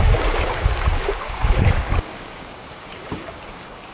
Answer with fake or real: fake